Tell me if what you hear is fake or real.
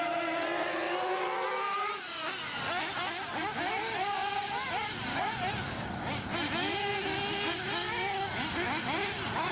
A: real